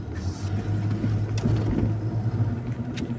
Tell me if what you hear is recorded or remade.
recorded